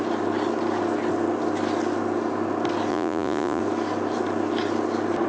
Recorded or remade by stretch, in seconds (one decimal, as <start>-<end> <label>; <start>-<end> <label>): 0.0-2.9 recorded; 2.9-3.6 remade; 3.6-5.3 recorded